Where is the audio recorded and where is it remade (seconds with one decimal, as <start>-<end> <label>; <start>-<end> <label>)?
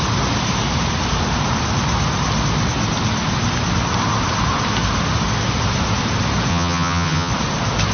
0.0-6.5 recorded; 6.5-7.3 remade; 7.3-7.9 recorded